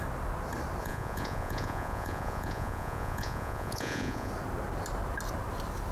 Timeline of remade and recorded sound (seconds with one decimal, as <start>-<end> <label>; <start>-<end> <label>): 0.0-0.8 recorded; 0.8-4.3 remade; 4.3-5.9 recorded